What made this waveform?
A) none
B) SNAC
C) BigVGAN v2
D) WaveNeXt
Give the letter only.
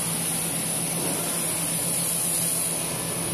A